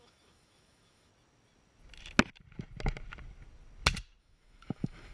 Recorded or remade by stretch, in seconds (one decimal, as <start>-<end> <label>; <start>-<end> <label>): 0.0-1.1 remade; 1.1-4.2 recorded; 4.2-5.1 remade